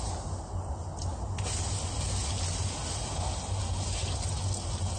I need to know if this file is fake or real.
real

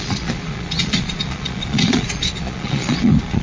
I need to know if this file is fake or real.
fake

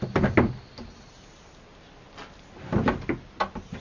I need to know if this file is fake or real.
real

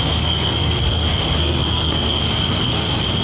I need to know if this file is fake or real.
fake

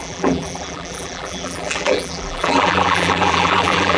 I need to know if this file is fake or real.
fake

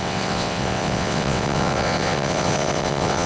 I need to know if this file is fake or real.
fake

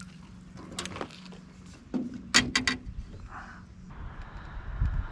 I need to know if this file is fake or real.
real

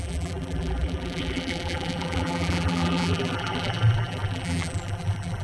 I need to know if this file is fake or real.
fake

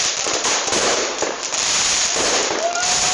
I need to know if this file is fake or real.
fake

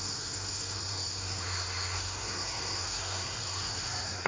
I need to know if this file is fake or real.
fake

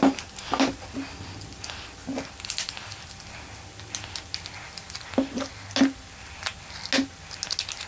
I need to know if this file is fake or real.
real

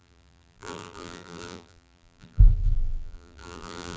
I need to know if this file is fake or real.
fake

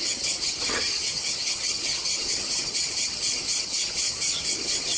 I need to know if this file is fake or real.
fake